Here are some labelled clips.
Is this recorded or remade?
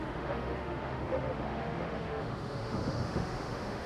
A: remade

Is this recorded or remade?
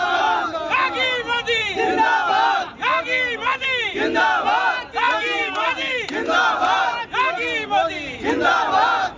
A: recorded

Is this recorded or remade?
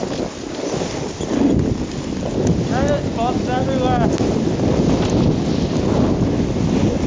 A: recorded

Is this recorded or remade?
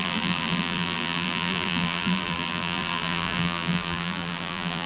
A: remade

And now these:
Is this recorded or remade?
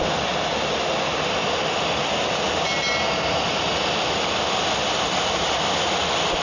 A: recorded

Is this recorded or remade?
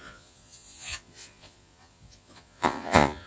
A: remade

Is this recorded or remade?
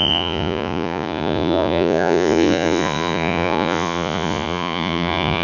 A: remade